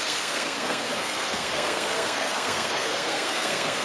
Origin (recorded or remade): remade